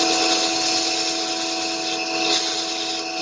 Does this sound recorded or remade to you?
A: recorded